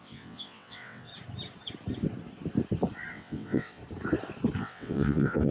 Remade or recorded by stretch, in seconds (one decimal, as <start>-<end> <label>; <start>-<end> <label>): 0.0-1.1 remade; 1.1-3.1 recorded; 3.1-3.8 remade; 3.8-4.6 recorded; 4.6-5.5 remade